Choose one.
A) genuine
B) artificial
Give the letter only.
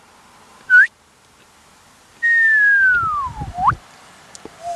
A